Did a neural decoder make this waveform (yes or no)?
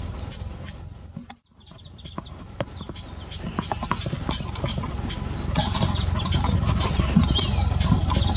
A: no